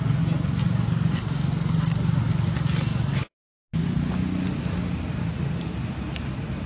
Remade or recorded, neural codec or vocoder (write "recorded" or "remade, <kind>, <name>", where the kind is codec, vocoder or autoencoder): recorded